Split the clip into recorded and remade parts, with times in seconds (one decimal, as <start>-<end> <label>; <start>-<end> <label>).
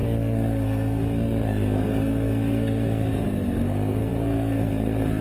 0.0-5.2 remade